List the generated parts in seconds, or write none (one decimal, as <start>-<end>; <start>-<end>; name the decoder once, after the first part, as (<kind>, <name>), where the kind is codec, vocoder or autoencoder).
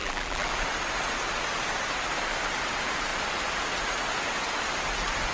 0.0-0.5 (vocoder, BigVGAN v2)